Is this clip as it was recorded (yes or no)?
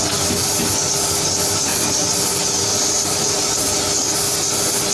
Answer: yes